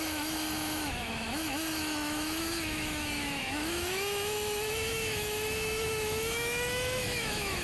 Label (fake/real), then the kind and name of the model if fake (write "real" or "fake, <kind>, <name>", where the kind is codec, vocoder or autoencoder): fake, autoencoder, DAC-VAE